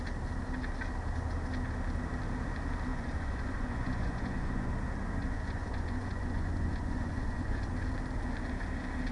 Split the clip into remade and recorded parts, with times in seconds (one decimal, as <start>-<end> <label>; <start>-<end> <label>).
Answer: 0.0-2.9 recorded; 2.9-4.7 remade; 4.7-5.2 recorded; 5.2-7.7 remade; 7.7-9.1 recorded